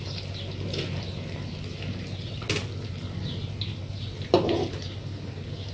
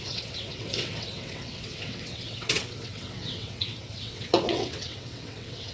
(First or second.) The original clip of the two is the first